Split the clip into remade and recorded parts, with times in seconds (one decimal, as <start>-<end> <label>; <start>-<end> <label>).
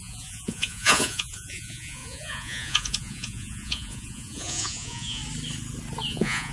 0.0-5.2 remade; 5.2-6.1 recorded; 6.1-6.5 remade